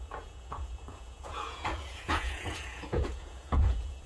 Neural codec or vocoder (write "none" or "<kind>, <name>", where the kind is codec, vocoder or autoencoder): vocoder, Vocos